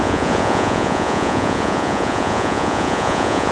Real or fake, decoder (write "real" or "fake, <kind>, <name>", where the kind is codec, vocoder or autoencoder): fake, vocoder, Vocos